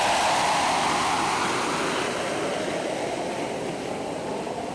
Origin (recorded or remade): recorded